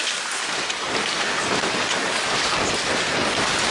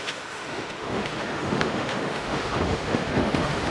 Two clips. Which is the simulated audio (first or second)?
second